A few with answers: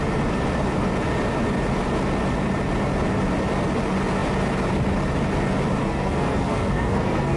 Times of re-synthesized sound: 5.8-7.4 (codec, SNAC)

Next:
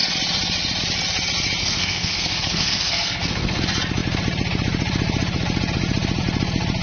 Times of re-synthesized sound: 1.6-3.6 (codec, SNAC)

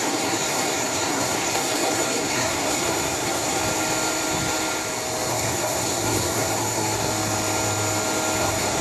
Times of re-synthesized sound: 0.0-3.6 (codec, SNAC); 5.3-7.1; 8.4-8.8

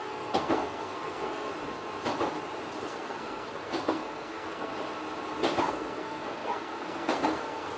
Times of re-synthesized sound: 0.0-1.5 (codec, SNAC); 2.8-4.7; 5.6-7.8

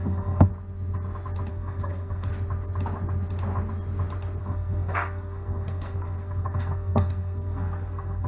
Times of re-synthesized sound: 0.0-0.5 (codec, SNAC); 1.5-2.3; 4.4-8.3

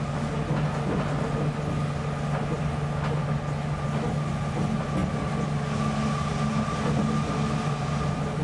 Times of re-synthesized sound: none

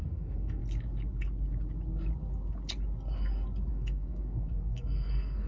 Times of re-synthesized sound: 0.0-0.6 (codec, SNAC); 3.7-5.5

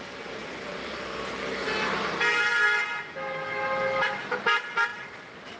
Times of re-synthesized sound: none